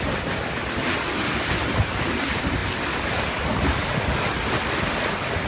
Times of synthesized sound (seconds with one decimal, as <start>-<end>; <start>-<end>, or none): 0.0-0.6; 1.3-2.6; 3.6-5.5